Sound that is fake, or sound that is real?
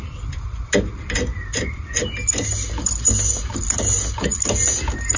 real